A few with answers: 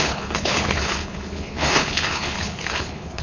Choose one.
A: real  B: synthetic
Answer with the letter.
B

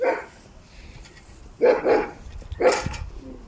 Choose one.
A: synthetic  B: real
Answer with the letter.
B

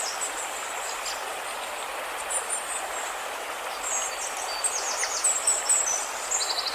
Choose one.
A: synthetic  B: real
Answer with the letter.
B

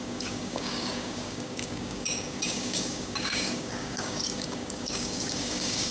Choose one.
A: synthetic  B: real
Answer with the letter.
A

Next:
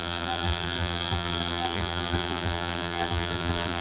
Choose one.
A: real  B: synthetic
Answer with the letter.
B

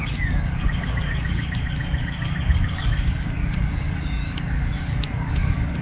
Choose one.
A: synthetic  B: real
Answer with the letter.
A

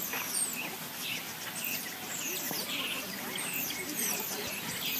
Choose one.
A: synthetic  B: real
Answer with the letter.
B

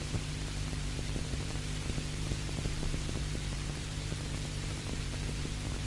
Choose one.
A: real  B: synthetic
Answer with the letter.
B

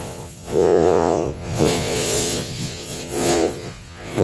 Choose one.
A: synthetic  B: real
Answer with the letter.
A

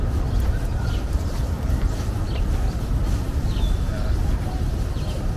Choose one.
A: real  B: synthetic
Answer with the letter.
A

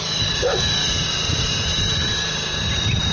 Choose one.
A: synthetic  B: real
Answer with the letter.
A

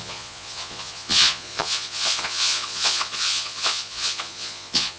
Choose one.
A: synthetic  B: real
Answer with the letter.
A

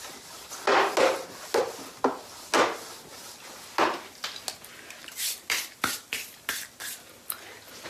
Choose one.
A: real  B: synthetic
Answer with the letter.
A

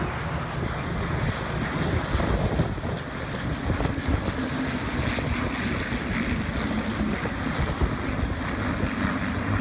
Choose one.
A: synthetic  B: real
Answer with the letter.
B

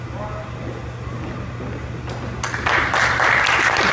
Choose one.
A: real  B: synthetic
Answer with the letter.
A